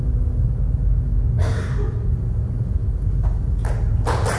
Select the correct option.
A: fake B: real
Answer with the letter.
B